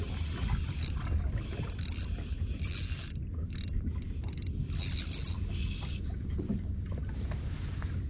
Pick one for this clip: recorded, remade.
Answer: recorded